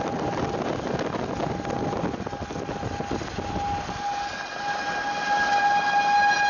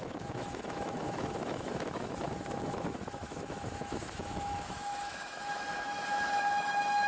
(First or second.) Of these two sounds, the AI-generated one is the second